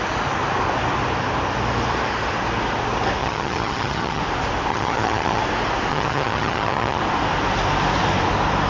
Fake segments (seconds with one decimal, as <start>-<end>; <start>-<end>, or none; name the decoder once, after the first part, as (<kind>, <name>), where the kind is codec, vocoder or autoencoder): 3.2-4.2 (vocoder, HiFi-GAN); 4.7-5.4; 5.9-7.0